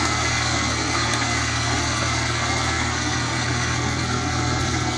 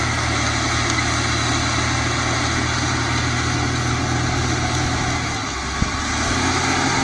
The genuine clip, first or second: second